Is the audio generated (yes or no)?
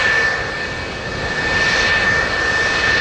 no